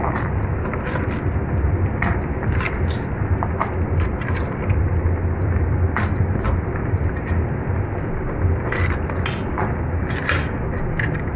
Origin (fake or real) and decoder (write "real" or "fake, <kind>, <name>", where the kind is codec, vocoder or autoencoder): real